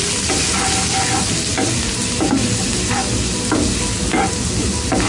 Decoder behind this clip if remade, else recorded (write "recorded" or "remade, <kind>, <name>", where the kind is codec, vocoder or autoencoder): recorded